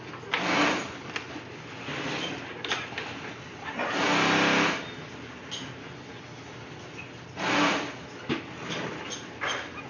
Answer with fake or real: real